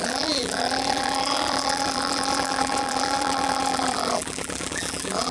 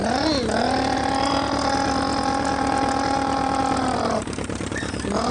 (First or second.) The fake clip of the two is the first